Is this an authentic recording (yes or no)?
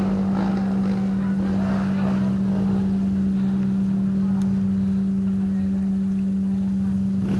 yes